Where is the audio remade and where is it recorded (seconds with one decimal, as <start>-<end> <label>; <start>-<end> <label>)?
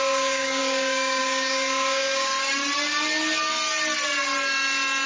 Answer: 0.0-2.3 remade; 2.3-5.1 recorded